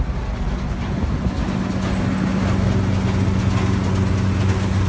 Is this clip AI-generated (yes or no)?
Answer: no